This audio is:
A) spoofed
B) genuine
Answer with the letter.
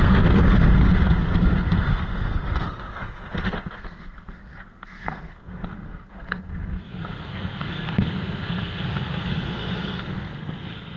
A